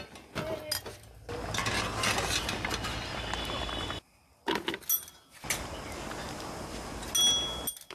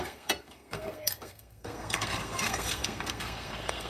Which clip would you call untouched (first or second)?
first